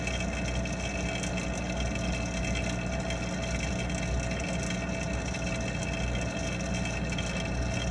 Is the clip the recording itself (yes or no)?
yes